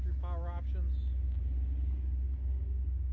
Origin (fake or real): real